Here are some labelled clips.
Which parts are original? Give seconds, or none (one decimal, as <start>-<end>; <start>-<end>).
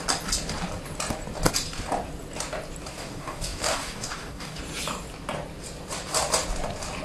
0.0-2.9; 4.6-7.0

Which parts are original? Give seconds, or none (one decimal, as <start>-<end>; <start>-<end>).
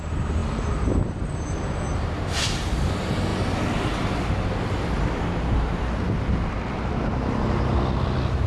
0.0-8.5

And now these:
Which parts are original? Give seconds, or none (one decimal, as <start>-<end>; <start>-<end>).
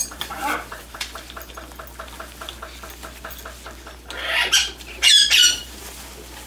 1.5-4.6; 5.8-6.5